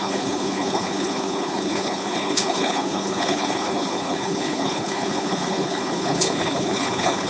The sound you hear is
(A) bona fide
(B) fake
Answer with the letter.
B